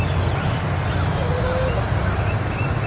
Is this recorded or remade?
recorded